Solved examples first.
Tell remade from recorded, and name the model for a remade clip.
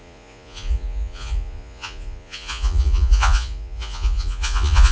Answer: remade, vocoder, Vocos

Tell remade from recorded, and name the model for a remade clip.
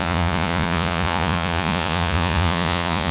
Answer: remade, vocoder, Vocos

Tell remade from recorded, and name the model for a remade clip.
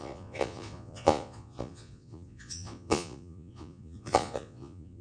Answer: remade, vocoder, Vocos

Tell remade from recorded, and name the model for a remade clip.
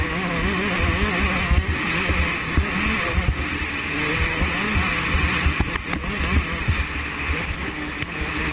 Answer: recorded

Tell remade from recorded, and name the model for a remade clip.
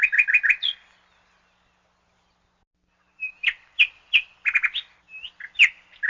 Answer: recorded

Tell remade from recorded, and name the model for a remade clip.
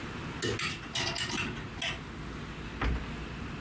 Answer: recorded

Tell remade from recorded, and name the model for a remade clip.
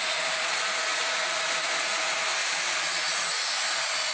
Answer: remade, vocoder, Vocos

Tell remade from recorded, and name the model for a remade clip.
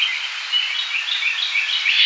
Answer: recorded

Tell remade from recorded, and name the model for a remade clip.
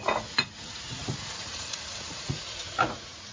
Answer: remade, vocoder, Vocos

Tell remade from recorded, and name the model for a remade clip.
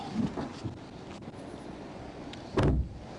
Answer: recorded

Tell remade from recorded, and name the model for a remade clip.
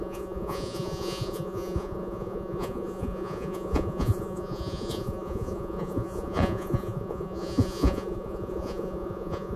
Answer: remade, vocoder, Vocos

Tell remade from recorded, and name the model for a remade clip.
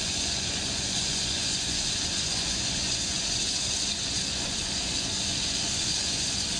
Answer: remade, vocoder, Vocos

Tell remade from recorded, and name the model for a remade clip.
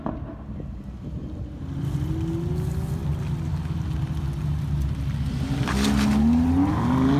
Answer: recorded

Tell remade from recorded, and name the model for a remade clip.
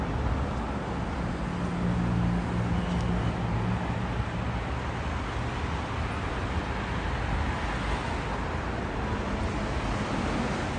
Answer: recorded